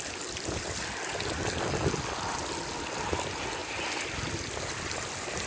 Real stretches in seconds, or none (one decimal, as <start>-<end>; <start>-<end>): 0.0-5.5